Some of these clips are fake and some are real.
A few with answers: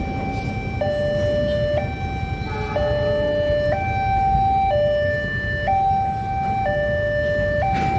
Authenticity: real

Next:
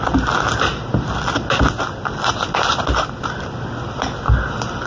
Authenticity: real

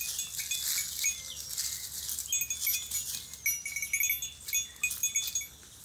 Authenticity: real